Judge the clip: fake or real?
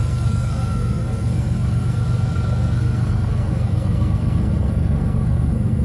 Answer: fake